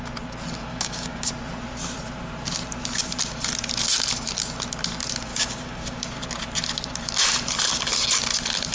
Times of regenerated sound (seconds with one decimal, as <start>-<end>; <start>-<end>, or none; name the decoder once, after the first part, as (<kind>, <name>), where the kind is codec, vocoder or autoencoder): 0.7-1.3 (codec, DAC); 5.3-6.0